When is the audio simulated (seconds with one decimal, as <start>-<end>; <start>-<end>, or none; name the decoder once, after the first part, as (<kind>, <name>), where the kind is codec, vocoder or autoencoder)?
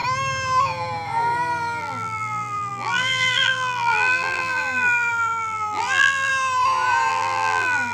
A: 1.8-6.3 (vocoder, BigVGAN v2); 7.1-7.9